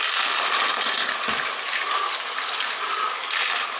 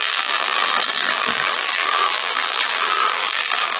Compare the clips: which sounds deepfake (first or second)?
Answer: second